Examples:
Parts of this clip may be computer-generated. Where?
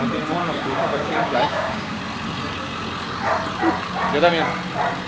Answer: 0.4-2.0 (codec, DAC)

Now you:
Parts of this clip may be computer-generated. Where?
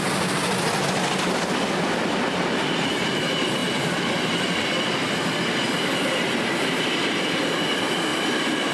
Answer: none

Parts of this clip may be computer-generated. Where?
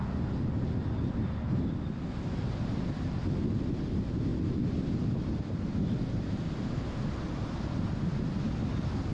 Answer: none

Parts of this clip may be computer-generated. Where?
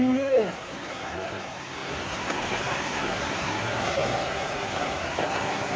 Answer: 0.0-5.8 (codec, SNAC)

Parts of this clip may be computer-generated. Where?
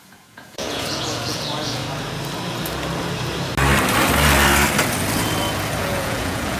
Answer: 0.0-1.8 (vocoder, Vocos); 5.8-6.6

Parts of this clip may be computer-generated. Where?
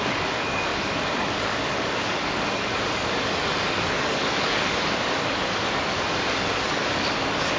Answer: 0.0-7.6 (codec, DAC)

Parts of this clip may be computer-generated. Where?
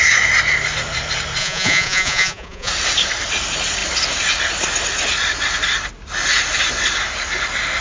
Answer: 1.4-2.7 (vocoder, Vocos)